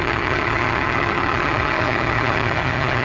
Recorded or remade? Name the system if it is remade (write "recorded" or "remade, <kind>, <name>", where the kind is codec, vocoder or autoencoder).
remade, vocoder, HiFi-GAN